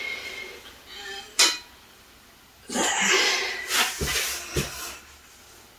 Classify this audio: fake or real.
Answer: real